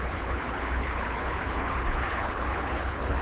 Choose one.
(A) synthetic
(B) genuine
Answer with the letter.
A